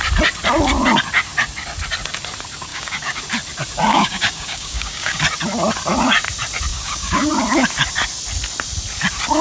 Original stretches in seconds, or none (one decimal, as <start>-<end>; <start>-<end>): 0.0-2.7; 3.2-3.9; 5.2-6.7; 7.3-9.4